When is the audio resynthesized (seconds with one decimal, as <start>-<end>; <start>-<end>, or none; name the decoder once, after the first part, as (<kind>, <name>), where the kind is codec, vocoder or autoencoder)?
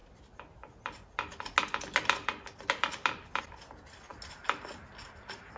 none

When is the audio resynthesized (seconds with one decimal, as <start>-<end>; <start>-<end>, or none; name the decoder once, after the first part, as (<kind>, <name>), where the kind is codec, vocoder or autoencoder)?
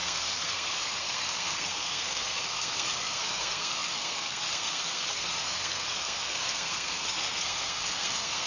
0.0-8.5 (codec, SNAC)